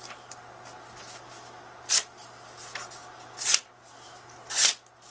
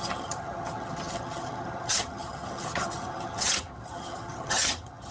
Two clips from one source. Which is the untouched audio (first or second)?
first